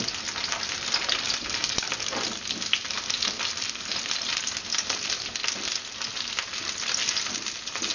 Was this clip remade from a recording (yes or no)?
no